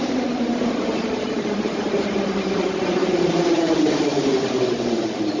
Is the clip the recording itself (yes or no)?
no